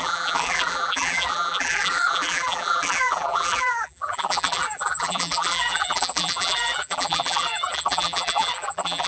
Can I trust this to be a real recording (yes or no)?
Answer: no